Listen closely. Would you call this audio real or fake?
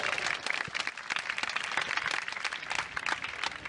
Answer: real